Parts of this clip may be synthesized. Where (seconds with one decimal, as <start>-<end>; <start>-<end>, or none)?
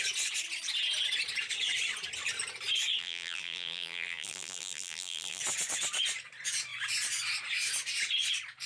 3.0-5.4